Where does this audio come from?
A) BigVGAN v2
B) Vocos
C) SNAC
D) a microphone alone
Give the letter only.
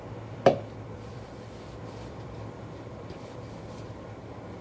A